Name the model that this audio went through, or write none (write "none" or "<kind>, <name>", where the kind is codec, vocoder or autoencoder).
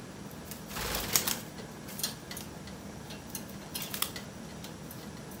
none